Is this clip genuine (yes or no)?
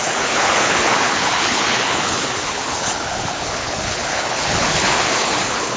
no